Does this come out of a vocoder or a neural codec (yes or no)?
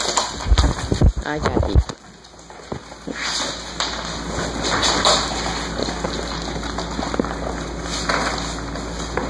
no